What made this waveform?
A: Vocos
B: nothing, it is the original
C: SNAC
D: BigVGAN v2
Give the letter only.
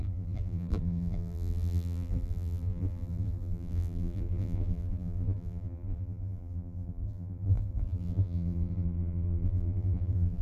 D